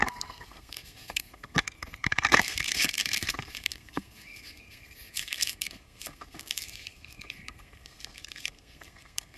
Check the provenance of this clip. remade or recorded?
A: remade